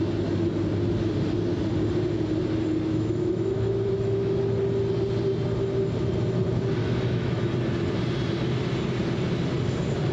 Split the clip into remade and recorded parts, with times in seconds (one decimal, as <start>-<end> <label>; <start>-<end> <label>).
0.0-2.9 recorded; 2.9-4.4 remade; 4.4-6.8 recorded; 6.8-7.5 remade; 7.5-10.1 recorded